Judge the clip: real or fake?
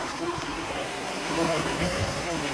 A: fake